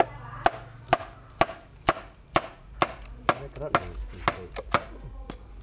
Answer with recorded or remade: recorded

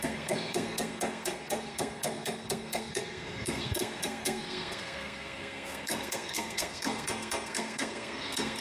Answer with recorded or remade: remade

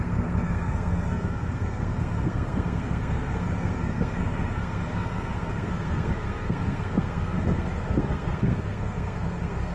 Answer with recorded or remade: remade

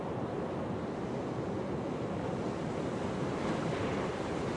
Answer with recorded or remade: recorded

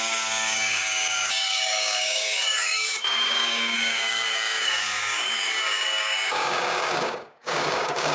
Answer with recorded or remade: remade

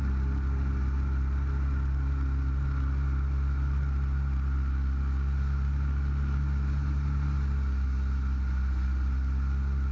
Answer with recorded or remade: recorded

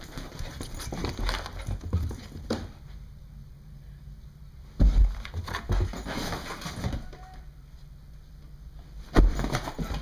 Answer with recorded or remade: recorded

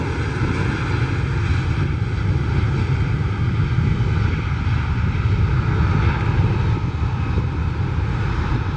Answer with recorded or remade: recorded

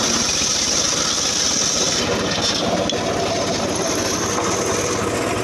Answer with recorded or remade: recorded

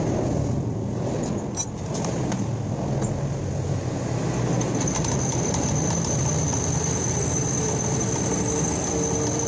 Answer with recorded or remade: recorded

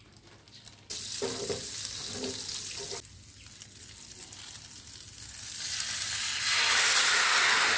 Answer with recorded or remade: recorded